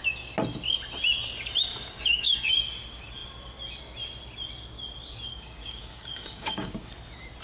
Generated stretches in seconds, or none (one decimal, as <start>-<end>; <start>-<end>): 1.7-2.5; 5.3-6.9